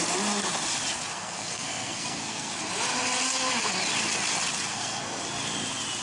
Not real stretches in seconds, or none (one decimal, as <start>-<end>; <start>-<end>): 1.1-2.6; 4.7-5.2